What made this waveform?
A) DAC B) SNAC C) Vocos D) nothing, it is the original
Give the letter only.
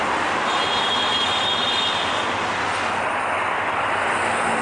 D